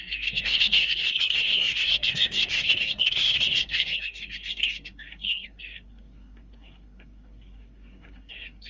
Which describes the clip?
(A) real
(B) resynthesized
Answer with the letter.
B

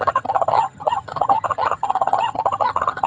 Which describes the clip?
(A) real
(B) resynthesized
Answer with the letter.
B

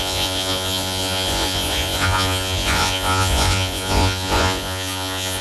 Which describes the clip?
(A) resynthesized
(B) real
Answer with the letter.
A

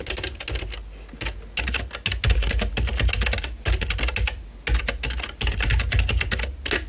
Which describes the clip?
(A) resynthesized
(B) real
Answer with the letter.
B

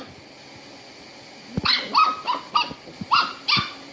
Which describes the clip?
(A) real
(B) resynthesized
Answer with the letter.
A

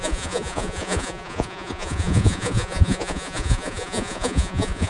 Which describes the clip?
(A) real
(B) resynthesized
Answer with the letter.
B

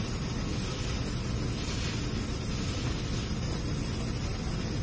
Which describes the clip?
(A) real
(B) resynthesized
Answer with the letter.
A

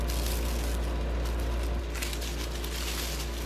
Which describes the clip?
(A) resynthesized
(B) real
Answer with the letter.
B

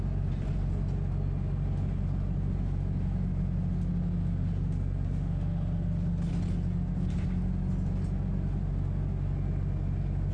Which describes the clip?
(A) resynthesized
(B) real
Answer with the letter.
B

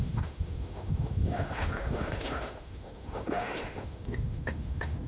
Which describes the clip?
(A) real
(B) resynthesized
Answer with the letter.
B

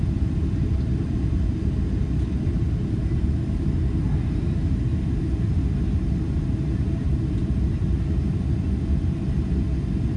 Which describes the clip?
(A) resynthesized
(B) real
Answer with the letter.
B